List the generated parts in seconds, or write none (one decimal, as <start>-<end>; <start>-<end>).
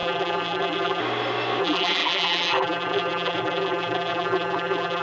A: 0.0-1.0; 1.6-5.0